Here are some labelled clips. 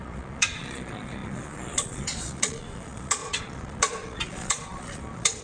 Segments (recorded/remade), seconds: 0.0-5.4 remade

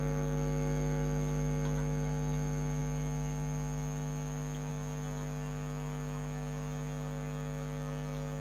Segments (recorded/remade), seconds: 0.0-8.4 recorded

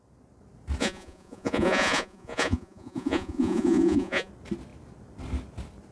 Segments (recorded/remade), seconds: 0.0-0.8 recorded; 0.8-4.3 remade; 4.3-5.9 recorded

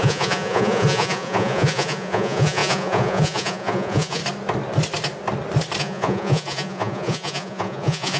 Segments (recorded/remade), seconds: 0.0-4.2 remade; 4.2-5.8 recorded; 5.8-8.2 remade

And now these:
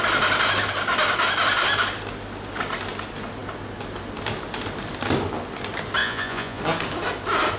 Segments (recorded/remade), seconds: 0.0-6.0 recorded; 6.0-6.6 remade; 6.6-7.6 recorded

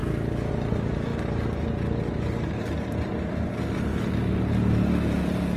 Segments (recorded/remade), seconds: 0.0-5.6 recorded

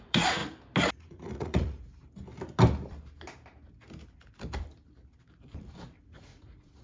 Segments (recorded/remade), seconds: 0.0-0.4 remade; 0.4-0.9 recorded; 0.9-1.9 remade; 1.9-6.0 recorded; 6.0-6.8 remade

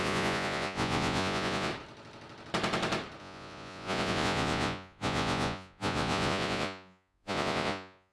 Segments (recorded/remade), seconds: 0.0-1.7 remade; 1.7-3.2 recorded; 3.2-8.1 remade